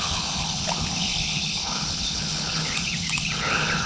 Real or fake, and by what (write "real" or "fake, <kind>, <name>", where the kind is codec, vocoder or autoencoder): fake, codec, HILCodec